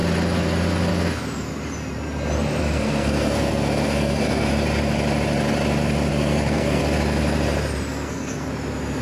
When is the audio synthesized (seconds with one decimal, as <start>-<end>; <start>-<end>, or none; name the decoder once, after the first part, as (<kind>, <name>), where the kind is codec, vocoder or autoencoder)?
2.6-4.5 (codec, SNAC); 6.1-6.8; 7.9-8.5